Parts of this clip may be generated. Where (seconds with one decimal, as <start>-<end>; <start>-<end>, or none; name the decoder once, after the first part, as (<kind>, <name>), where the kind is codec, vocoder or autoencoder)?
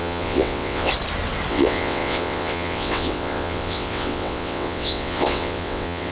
0.0-0.9 (vocoder, WaveNeXt); 1.5-6.1